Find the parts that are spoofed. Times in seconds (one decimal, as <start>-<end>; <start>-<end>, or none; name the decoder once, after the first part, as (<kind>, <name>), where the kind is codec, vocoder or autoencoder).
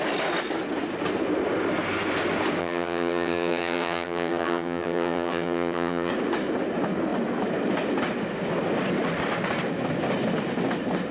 2.6-6.1 (vocoder, HiFi-GAN)